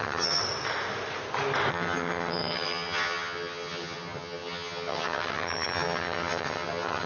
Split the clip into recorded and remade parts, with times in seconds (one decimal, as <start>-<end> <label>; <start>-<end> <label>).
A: 0.0-0.4 remade; 0.4-1.7 recorded; 1.7-7.1 remade